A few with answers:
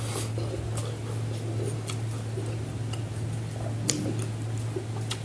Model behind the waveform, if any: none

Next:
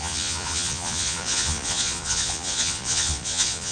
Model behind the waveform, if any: vocoder, Vocos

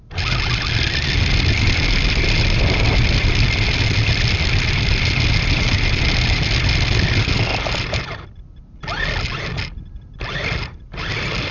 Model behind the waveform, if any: none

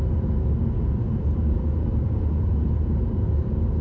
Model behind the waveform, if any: vocoder, BigVGAN v2